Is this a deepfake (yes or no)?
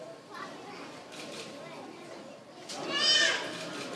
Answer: no